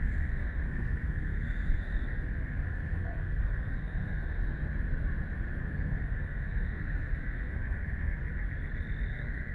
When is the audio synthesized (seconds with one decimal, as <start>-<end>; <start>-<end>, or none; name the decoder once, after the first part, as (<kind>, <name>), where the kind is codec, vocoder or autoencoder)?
0.0-4.4 (codec, SNAC); 5.6-8.2; 9.1-9.5